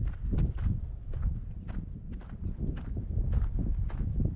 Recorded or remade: recorded